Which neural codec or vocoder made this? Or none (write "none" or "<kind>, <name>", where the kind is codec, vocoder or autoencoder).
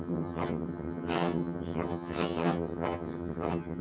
vocoder, HiFi-GAN